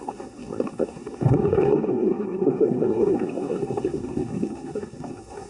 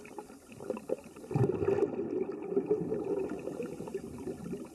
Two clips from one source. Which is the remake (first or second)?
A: first